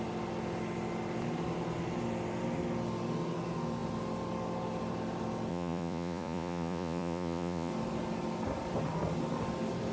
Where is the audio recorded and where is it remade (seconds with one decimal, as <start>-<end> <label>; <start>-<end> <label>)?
0.0-5.5 recorded; 5.5-7.7 remade; 7.7-9.9 recorded